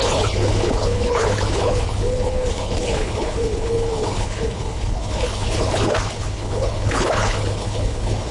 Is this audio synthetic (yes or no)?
yes